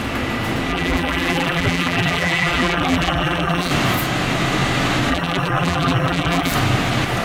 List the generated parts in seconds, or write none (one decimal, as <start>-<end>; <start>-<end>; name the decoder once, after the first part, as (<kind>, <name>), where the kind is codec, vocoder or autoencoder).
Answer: 0.7-3.7 (vocoder, BigVGAN v2); 5.1-6.5